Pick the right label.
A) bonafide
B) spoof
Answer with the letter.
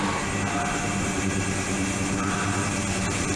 A